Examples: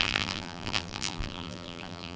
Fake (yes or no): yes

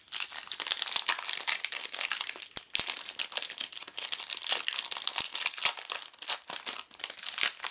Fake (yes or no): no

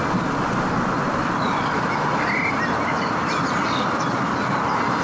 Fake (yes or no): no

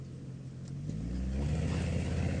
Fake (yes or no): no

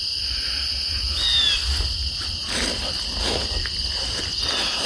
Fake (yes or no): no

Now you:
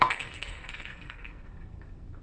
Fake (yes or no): yes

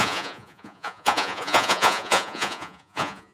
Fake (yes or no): yes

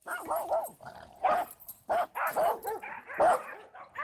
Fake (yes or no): no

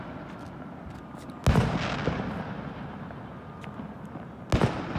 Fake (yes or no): no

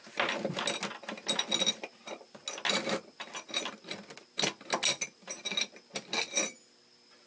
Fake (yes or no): no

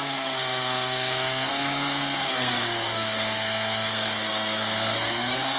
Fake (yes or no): yes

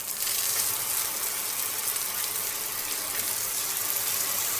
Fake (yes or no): no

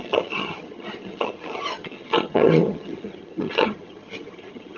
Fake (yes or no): yes